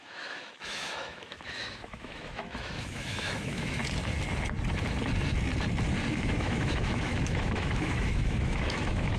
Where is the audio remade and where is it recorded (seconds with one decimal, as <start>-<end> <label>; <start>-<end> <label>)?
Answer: 0.0-3.8 remade; 3.8-6.1 recorded; 6.1-9.2 remade